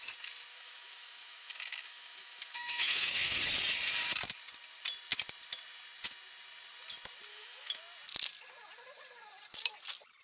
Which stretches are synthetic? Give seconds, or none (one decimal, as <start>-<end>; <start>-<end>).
0.5-3.4; 7.3-7.8